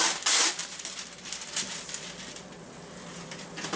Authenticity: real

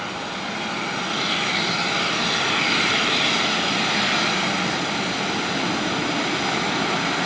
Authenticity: real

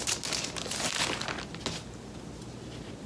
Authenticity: real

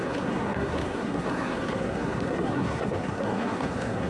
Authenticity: fake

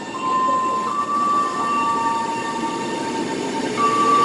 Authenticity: real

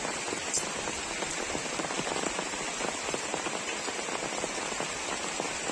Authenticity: real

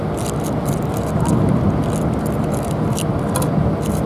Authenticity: real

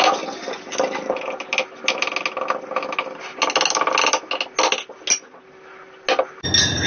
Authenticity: real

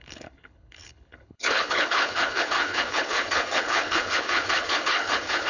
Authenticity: fake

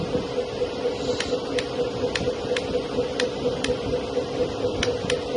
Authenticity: real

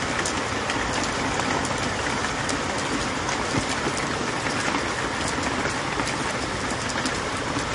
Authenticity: real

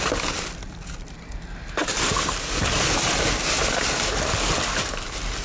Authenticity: real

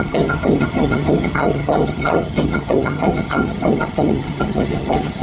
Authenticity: fake